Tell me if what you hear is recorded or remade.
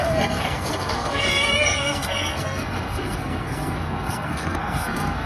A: remade